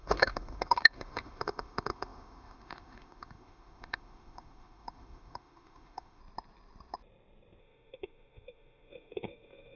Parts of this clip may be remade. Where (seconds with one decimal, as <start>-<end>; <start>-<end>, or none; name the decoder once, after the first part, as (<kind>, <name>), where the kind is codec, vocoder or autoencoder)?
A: 0.0-6.2 (autoencoder, DAC-VAE); 7.6-9.8

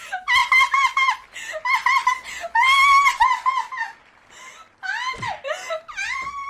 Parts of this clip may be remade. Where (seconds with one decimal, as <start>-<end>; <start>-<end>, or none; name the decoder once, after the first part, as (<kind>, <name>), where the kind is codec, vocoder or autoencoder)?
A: none

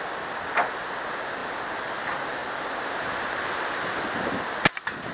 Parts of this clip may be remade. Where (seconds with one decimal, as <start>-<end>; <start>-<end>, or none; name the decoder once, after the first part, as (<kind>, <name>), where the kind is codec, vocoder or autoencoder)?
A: none

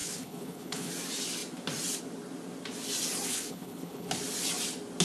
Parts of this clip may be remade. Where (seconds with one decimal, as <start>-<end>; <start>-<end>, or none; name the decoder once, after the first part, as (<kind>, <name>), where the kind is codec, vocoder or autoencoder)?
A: 0.0-0.9 (codec, HILCodec); 3.3-4.1

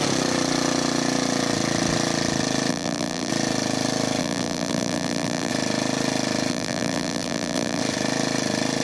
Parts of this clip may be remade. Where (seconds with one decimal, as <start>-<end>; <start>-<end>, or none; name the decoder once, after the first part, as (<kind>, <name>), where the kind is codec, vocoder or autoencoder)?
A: 2.7-3.3 (vocoder, BigVGAN v2); 4.2-5.5; 6.5-7.8

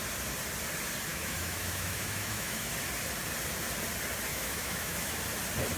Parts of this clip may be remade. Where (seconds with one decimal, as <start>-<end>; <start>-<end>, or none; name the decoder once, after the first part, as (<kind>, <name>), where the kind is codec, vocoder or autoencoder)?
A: 1.1-2.7 (autoencoder, DAC-VAE); 4.3-5.2